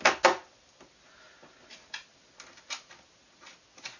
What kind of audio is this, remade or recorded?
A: recorded